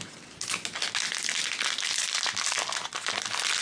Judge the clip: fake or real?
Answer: real